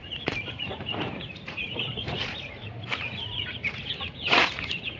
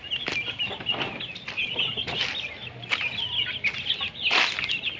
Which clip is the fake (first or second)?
first